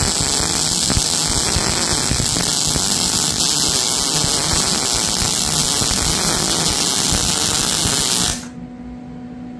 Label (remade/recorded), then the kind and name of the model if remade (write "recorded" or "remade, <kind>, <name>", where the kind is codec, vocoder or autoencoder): recorded